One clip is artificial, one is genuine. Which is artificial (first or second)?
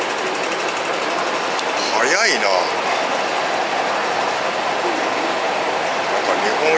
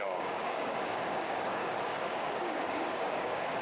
second